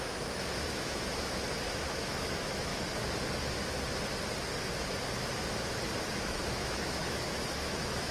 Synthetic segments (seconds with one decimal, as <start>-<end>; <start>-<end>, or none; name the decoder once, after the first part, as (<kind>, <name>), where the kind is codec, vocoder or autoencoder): 0.0-2.7 (autoencoder, DAC-VAE); 6.0-8.1